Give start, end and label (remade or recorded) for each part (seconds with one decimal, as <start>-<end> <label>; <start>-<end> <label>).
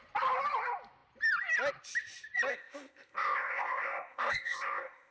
0.0-2.5 recorded; 2.5-5.1 remade